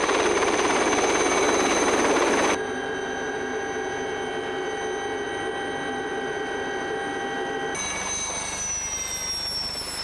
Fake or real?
real